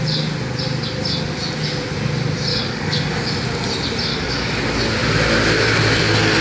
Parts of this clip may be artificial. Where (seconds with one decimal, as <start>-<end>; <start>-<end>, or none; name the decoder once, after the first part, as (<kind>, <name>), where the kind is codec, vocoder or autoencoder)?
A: 2.5-3.3 (codec, DAC); 4.1-4.6